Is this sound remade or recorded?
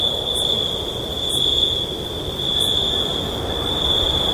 recorded